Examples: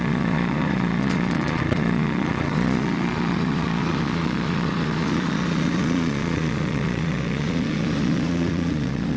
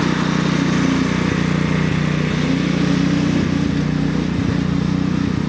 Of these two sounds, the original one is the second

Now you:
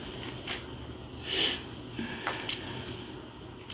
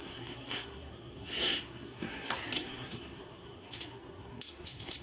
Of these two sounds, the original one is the first